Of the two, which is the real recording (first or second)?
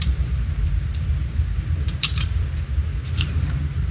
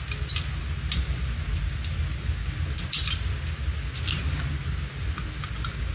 second